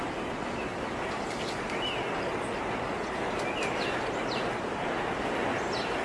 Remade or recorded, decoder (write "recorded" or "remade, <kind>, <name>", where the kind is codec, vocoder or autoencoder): recorded